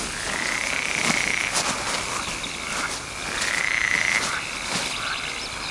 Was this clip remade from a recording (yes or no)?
no